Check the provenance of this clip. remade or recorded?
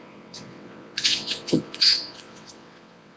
remade